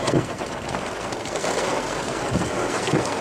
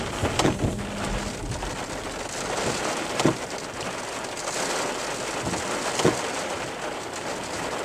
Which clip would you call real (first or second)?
second